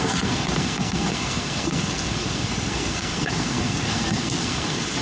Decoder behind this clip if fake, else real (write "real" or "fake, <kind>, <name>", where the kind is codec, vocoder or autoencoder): fake, codec, SNAC